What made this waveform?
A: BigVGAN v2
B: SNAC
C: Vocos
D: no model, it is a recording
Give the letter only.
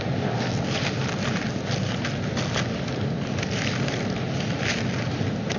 D